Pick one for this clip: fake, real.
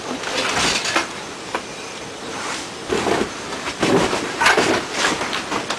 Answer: real